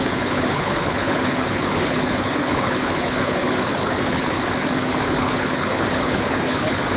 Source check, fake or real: fake